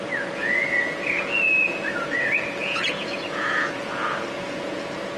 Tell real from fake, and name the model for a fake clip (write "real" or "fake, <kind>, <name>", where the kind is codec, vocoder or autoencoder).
fake, vocoder, Vocos